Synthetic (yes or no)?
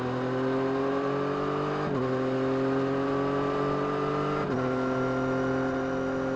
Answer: no